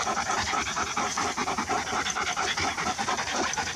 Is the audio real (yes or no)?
yes